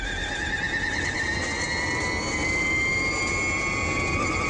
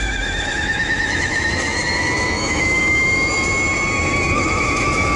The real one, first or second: first